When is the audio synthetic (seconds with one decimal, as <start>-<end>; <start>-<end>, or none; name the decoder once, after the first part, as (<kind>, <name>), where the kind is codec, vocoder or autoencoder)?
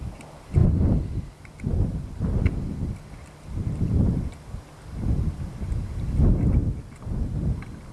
none